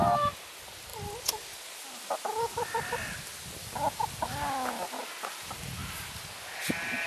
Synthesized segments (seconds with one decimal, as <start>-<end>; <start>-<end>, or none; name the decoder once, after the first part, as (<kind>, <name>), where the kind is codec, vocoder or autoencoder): none